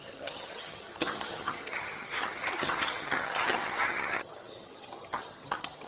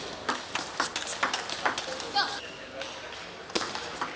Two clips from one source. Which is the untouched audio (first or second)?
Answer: second